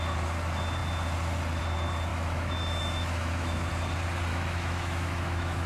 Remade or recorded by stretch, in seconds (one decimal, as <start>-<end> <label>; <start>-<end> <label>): 0.0-2.1 recorded; 2.1-3.7 remade; 3.7-4.3 recorded; 4.3-5.7 remade